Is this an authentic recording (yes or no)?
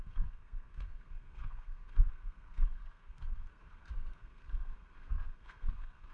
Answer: no